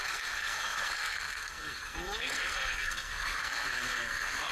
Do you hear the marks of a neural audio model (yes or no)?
yes